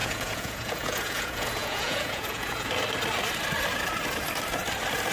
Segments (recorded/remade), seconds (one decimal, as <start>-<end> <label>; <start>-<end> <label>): 0.0-2.7 remade; 2.7-5.1 recorded